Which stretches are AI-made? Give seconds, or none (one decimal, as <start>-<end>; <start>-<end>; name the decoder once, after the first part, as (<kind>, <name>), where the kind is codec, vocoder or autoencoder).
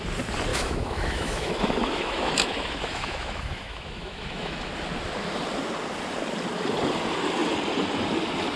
0.5-4.7 (autoencoder, DAC-VAE)